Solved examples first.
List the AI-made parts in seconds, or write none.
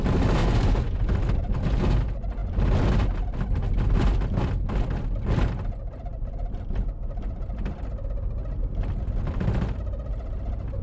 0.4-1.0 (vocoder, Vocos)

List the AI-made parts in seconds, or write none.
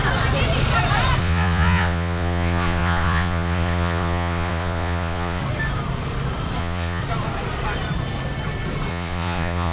1.2-5.4 (vocoder, Vocos); 6.6-7.0; 8.9-9.7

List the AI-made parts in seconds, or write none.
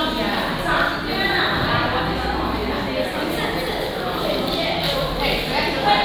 none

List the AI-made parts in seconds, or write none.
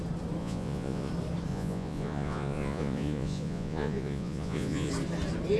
0.4-1.1 (vocoder, Vocos); 1.5-4.9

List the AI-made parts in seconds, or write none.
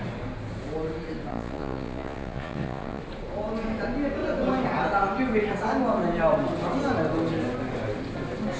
1.3-3.0 (vocoder, Vocos)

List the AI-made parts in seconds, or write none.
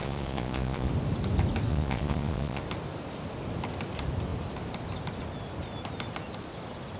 0.0-0.9 (vocoder, Vocos); 1.7-2.6